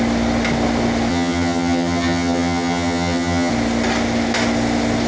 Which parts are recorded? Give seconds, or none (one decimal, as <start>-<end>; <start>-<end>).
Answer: 0.0-1.1; 3.5-5.1